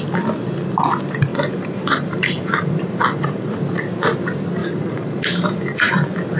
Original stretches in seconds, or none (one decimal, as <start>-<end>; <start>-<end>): 0.0-1.3; 3.6-4.6; 5.9-6.4